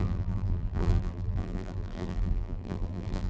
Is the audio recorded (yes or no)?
no